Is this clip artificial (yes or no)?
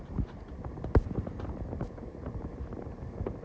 yes